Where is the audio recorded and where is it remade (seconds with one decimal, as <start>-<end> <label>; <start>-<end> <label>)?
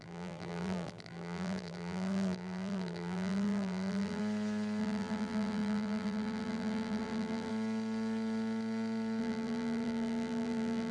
0.0-4.2 remade; 4.2-4.8 recorded; 4.8-7.5 remade; 7.5-9.2 recorded; 9.2-10.9 remade